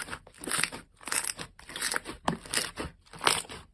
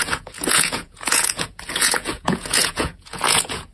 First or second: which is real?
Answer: first